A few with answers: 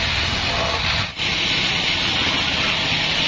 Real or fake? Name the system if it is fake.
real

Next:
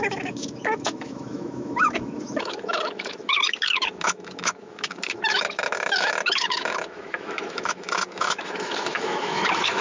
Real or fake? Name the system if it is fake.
fake, autoencoder, DAC-VAE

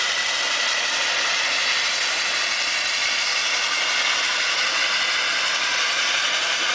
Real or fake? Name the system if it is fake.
real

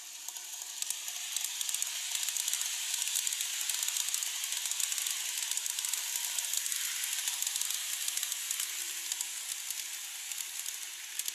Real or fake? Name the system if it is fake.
real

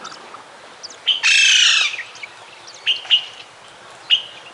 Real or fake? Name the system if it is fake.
real